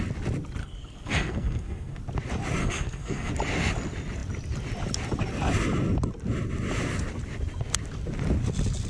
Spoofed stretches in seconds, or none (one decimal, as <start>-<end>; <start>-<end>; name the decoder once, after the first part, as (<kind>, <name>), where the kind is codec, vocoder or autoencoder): 0.6-2.0 (codec, SNAC); 2.6-3.3